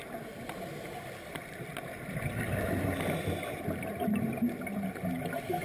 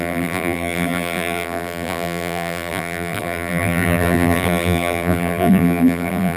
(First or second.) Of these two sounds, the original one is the first